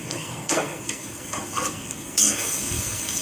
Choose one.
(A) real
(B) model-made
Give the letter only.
B